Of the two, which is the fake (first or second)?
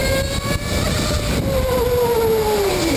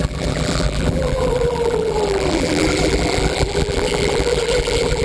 second